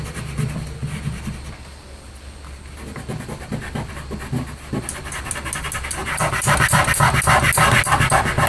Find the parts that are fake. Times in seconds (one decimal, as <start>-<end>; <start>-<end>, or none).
none

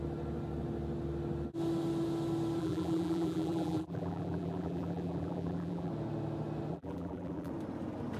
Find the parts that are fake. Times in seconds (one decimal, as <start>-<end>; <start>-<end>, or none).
2.6-5.9; 6.7-7.5

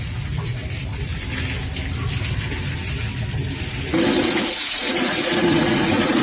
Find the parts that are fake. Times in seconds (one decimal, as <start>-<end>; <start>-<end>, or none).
0.0-0.6; 4.3-6.2

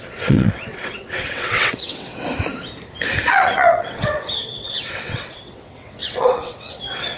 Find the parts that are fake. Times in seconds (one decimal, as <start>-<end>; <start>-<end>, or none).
0.0-2.3; 3.3-7.2

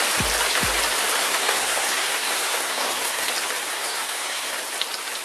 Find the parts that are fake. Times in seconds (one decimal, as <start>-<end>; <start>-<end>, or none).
1.2-3.3; 3.7-4.6